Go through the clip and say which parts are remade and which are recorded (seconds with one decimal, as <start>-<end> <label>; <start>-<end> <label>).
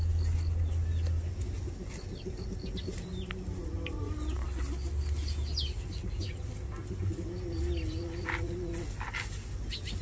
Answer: 0.0-10.0 recorded